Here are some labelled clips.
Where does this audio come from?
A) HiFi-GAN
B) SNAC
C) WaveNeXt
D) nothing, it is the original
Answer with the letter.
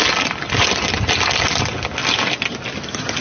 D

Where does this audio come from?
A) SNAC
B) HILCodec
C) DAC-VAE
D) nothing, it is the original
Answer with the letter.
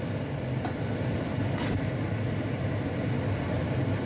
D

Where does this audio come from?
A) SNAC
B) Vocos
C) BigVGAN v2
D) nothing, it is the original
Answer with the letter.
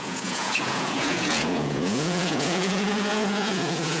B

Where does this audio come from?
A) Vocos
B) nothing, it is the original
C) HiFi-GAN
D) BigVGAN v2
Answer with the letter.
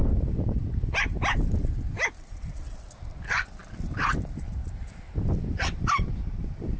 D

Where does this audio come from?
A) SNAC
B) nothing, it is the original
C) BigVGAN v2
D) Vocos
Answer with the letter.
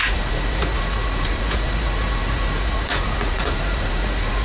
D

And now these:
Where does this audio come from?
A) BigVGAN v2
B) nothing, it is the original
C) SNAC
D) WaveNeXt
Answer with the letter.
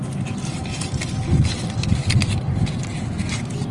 B